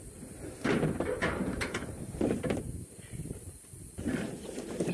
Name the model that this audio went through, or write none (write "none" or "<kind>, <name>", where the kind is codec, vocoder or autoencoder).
vocoder, BigVGAN v2